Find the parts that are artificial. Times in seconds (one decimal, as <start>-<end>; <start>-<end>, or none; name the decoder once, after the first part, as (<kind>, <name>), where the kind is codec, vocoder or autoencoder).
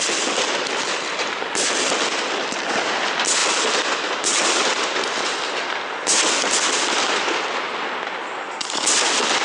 none